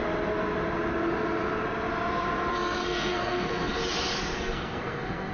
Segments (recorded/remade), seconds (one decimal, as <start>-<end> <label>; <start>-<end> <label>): 0.0-2.5 recorded; 2.5-3.7 remade; 3.7-4.3 recorded; 4.3-5.3 remade